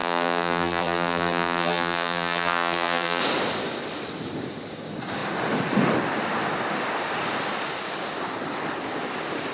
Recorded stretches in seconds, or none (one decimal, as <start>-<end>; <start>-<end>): 3.2-9.5